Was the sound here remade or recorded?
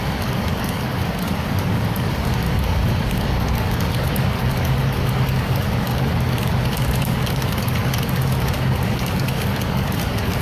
remade